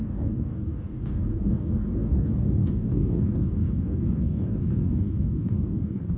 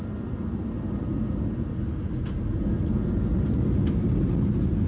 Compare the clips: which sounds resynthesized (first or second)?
first